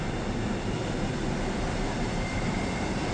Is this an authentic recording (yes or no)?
yes